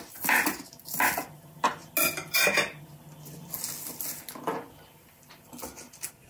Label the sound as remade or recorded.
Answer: recorded